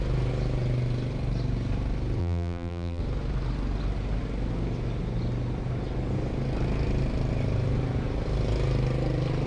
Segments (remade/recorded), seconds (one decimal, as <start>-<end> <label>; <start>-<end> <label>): 0.0-2.2 recorded; 2.2-3.0 remade; 3.0-9.5 recorded